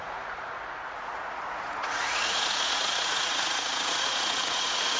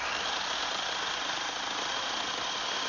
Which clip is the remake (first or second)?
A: first